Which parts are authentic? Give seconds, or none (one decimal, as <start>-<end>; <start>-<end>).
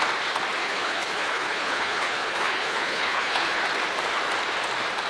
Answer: 0.0-0.6; 3.6-5.1